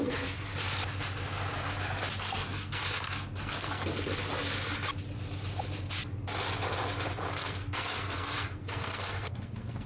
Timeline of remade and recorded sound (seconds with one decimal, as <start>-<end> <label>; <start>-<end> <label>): 0.0-0.5 remade; 0.5-2.2 recorded; 2.2-4.2 remade; 4.2-7.3 recorded; 7.3-9.9 remade